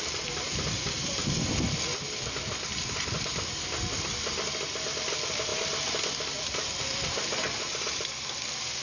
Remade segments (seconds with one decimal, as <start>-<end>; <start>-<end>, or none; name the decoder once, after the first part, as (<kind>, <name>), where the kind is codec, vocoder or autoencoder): none